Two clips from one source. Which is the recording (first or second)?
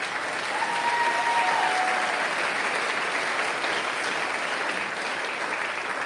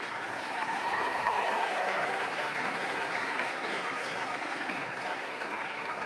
first